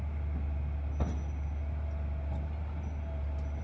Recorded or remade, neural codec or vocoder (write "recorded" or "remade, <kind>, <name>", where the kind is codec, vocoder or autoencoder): recorded